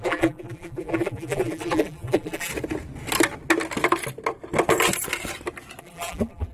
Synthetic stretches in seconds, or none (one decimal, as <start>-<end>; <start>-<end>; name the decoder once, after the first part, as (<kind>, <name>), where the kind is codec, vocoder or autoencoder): 0.0-2.5 (vocoder, BigVGAN v2); 5.8-6.5